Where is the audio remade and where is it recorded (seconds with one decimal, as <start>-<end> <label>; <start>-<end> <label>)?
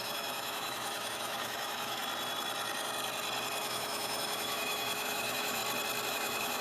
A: 0.0-2.0 remade; 2.0-3.6 recorded; 3.6-5.6 remade; 5.6-6.1 recorded; 6.1-6.6 remade